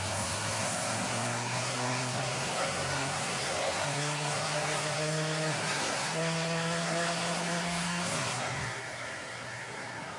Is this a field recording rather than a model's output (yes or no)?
no